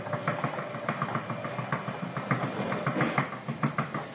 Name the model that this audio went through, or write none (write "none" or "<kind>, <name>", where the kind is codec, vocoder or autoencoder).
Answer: none